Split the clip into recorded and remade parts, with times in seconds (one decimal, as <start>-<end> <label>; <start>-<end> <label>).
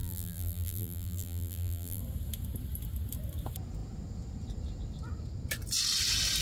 0.0-2.0 remade; 2.0-6.4 recorded